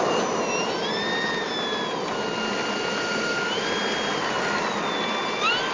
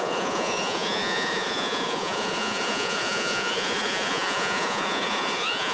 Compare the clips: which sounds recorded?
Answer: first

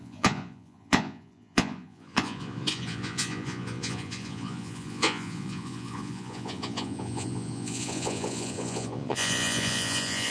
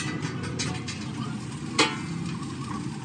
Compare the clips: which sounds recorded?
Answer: second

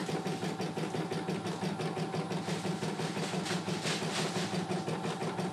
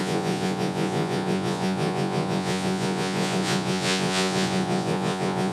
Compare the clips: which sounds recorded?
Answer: first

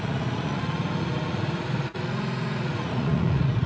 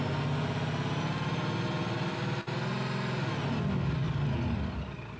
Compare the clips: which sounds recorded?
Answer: second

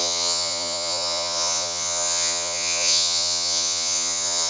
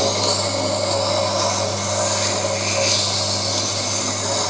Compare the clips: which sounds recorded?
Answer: second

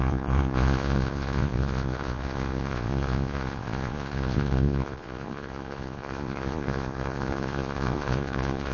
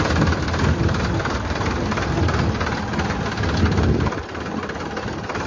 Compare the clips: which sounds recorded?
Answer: second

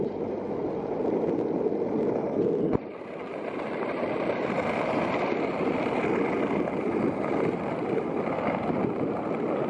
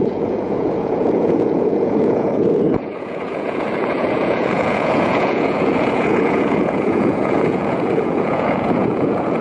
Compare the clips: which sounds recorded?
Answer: first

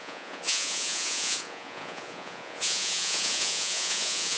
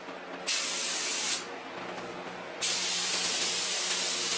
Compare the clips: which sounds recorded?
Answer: second